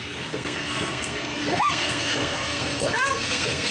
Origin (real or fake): fake